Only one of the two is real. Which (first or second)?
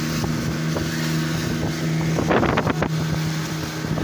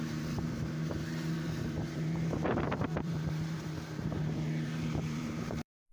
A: first